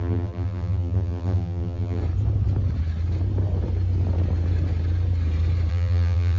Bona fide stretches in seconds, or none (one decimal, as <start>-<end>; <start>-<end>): 2.0-5.7